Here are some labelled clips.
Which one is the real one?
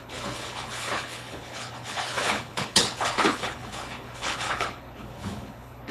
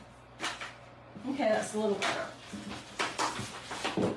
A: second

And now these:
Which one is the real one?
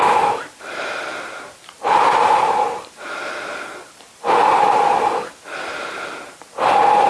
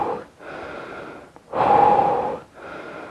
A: second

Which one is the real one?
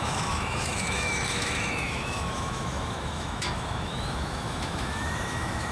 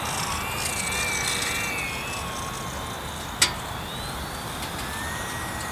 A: second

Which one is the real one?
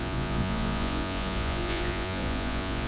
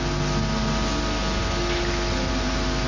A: second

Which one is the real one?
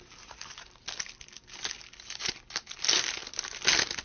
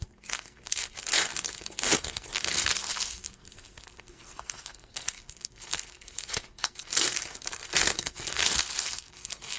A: first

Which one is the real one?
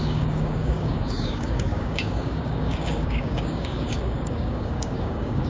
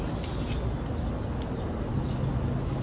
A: second